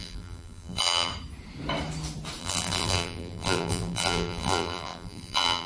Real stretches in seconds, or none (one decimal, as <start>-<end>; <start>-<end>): 1.1-2.4